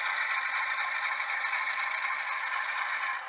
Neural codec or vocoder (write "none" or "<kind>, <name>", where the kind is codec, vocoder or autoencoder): none